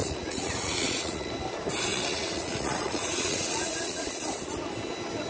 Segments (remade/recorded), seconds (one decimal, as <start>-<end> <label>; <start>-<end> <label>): 0.0-1.3 remade; 1.3-1.9 recorded; 1.9-4.3 remade; 4.3-5.3 recorded